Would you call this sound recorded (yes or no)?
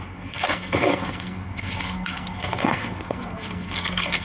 no